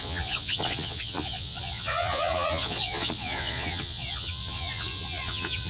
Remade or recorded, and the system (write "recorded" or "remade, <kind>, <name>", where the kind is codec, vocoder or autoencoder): remade, vocoder, Vocos